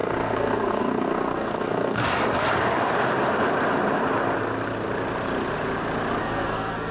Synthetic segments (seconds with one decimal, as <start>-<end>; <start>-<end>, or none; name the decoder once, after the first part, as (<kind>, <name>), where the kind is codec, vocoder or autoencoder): 0.0-2.1 (codec, SNAC); 6.2-6.9